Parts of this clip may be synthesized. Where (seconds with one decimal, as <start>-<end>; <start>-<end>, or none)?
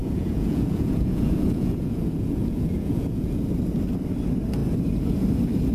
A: 0.0-3.4